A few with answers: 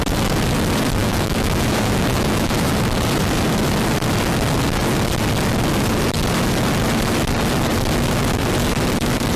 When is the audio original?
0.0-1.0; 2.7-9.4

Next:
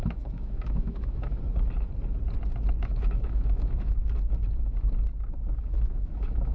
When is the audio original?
1.3-2.8; 4.0-5.6

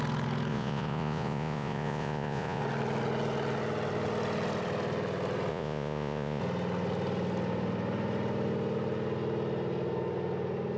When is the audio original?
0.0-0.5; 2.6-5.5; 6.4-10.8

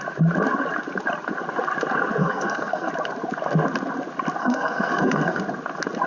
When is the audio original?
0.0-2.2; 2.9-4.4; 5.4-6.1

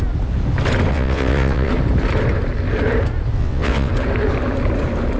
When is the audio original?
0.0-0.9; 1.7-3.4; 3.9-5.2